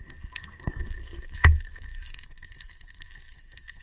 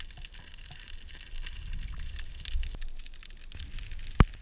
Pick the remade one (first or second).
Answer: first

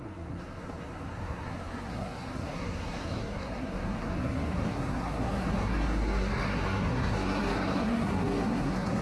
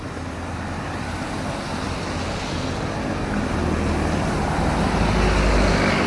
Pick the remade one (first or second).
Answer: first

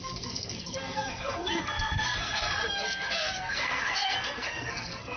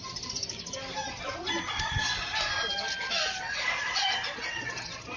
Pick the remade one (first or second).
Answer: first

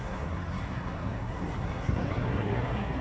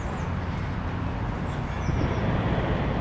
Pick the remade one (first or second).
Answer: first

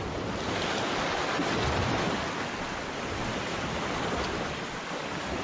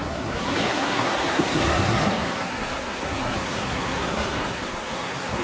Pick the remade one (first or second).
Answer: second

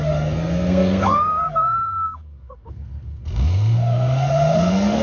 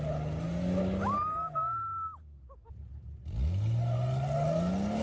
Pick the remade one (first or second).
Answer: first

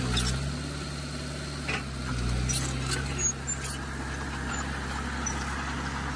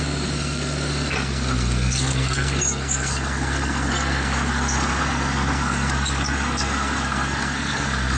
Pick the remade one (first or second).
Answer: second